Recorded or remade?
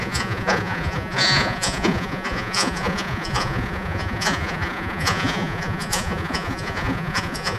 remade